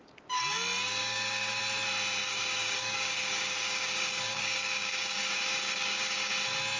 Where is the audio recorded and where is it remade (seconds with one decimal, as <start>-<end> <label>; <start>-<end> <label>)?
0.0-1.0 recorded; 1.0-1.6 remade; 1.6-2.2 recorded; 2.2-6.3 remade; 6.3-6.8 recorded